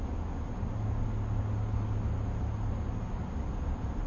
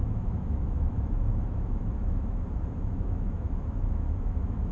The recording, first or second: first